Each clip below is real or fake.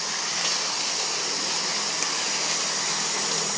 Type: real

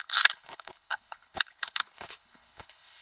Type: fake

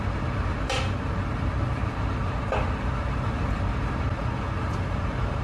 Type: real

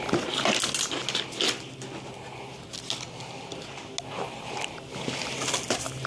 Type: real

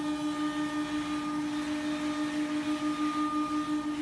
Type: real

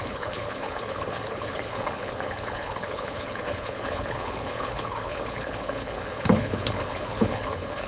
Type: fake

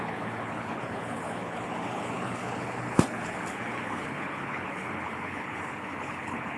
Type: fake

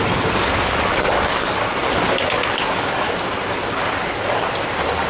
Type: real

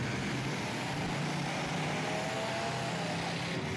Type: real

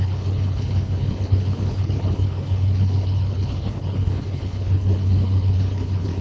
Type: fake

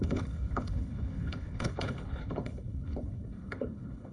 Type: fake